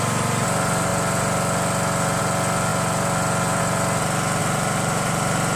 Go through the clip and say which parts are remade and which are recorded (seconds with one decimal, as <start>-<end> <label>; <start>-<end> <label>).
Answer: 0.0-4.4 recorded; 4.4-5.6 remade